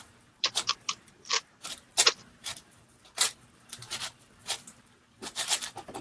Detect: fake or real fake